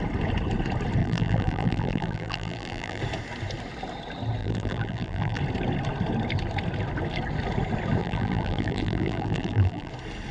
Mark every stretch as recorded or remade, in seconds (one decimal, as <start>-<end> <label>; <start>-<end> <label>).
0.0-1.0 recorded; 1.0-3.0 remade; 3.0-4.4 recorded; 4.4-5.4 remade; 5.4-8.0 recorded; 8.0-9.9 remade; 9.9-10.3 recorded